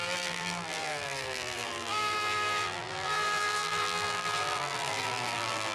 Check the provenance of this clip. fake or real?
fake